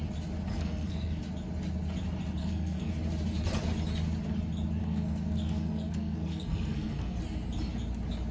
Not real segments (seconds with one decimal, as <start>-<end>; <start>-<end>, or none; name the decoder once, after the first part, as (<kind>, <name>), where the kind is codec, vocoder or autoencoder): 0.5-1.2 (codec, SNAC); 2.4-2.9; 4.8-7.2